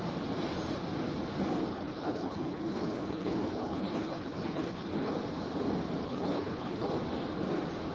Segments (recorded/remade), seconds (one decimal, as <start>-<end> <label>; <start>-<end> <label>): 0.0-1.7 recorded; 1.7-5.1 remade; 5.1-6.0 recorded; 6.0-6.9 remade; 6.9-7.9 recorded